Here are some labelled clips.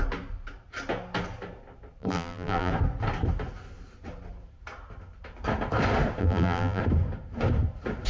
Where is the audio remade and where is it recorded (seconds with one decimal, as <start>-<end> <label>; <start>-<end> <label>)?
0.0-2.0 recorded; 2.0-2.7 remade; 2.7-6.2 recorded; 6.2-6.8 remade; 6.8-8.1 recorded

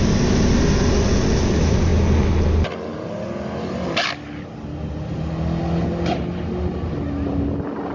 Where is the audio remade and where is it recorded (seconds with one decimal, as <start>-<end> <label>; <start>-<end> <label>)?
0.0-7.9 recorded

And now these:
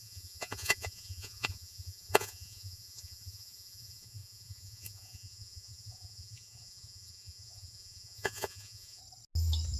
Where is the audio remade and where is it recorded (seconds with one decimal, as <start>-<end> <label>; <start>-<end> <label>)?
0.0-9.0 remade; 9.0-9.8 recorded

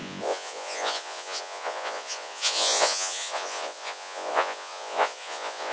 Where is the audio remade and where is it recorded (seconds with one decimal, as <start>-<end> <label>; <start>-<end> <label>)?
0.0-5.7 remade

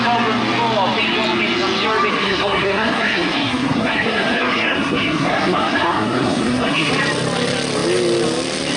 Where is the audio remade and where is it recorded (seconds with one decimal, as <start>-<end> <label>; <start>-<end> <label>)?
0.0-2.1 recorded; 2.1-6.9 remade; 6.9-8.8 recorded